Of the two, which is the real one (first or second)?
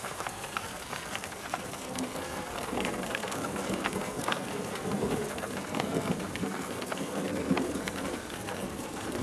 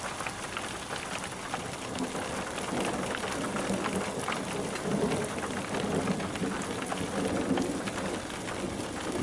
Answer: second